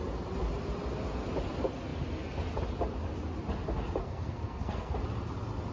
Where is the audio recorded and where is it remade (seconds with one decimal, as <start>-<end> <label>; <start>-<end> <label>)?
0.0-4.0 recorded; 4.0-4.9 remade; 4.9-5.7 recorded

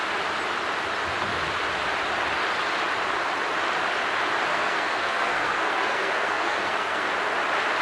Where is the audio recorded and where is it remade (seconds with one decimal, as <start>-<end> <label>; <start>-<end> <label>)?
0.0-4.4 recorded; 4.4-7.1 remade; 7.1-7.8 recorded

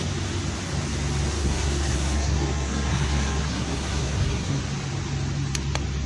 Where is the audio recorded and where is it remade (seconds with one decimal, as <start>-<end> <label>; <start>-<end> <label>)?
0.0-1.4 recorded; 1.4-4.6 remade; 4.6-6.1 recorded